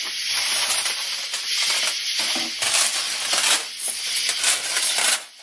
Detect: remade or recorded recorded